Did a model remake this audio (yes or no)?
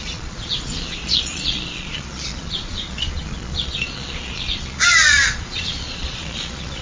yes